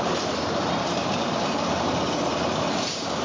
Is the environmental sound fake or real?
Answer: fake